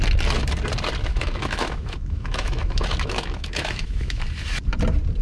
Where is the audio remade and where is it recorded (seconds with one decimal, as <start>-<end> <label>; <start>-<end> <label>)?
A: 0.0-1.1 recorded; 1.1-4.2 remade; 4.2-5.2 recorded